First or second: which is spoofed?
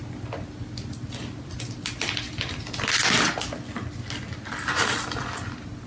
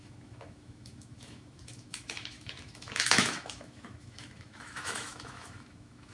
second